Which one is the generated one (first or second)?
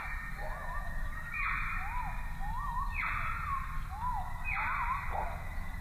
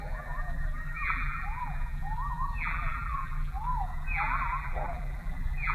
second